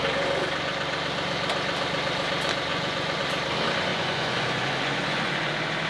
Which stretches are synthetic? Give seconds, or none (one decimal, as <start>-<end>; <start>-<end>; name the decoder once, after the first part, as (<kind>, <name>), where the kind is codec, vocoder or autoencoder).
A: 2.7-3.2 (vocoder, Vocos); 3.9-5.5